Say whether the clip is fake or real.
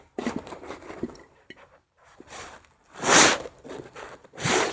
fake